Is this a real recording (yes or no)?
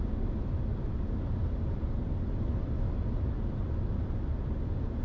yes